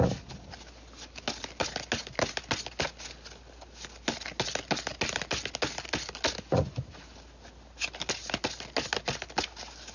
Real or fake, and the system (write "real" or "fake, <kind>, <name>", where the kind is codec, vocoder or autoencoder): real